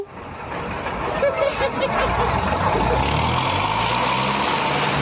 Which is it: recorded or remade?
recorded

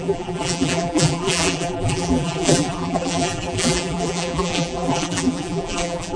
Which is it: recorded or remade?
remade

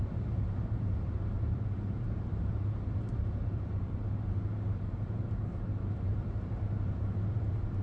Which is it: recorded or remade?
remade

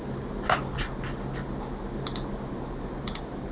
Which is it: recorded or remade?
recorded